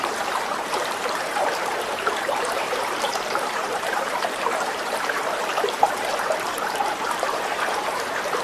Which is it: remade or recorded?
remade